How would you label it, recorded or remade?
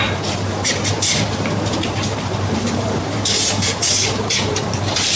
remade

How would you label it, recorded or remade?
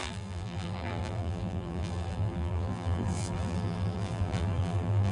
remade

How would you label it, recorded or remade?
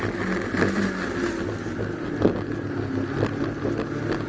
recorded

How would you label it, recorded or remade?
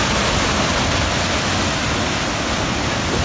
recorded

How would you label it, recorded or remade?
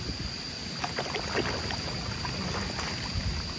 recorded